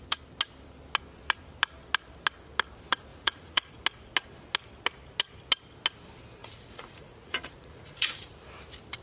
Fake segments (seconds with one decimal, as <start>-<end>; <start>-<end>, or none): 3.1-3.7; 6.4-8.3